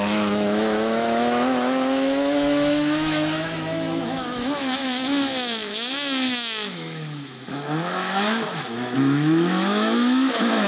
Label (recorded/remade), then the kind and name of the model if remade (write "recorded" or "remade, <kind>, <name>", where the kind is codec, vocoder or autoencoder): remade, autoencoder, DAC-VAE